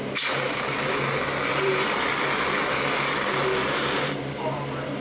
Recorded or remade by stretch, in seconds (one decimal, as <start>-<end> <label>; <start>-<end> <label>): 0.0-0.9 remade; 0.9-1.5 recorded; 1.5-2.1 remade; 2.1-5.0 recorded